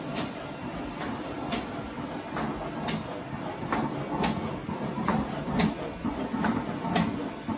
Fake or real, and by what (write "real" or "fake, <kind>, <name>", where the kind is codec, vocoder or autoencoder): real